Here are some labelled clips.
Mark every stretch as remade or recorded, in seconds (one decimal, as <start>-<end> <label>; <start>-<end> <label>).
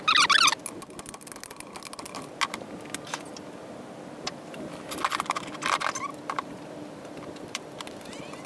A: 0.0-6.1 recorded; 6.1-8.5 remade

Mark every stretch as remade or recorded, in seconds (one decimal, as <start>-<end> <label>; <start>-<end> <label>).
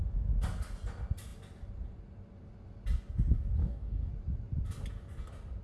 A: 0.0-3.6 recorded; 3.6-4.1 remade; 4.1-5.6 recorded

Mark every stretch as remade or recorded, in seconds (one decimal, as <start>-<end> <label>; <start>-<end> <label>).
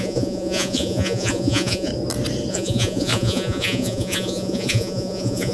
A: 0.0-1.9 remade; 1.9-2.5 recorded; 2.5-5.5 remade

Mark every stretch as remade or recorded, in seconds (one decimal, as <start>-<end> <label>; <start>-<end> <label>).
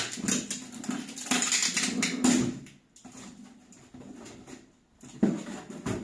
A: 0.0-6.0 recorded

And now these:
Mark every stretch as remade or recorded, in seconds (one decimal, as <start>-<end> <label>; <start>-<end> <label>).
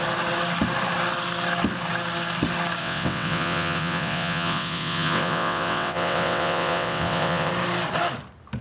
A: 0.0-2.8 recorded; 2.8-7.5 remade; 7.5-8.6 recorded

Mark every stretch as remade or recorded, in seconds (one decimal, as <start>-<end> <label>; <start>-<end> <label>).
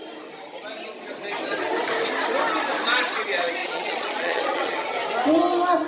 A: 0.0-3.6 recorded; 3.6-4.9 remade; 4.9-5.9 recorded